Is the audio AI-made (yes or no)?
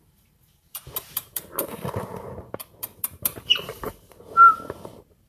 yes